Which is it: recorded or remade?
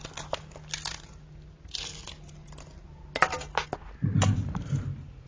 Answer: recorded